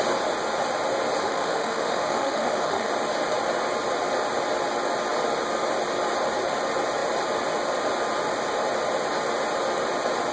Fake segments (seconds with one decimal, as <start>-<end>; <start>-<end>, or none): 1.2-2.9